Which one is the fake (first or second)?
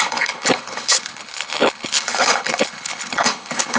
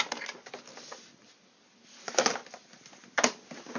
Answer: first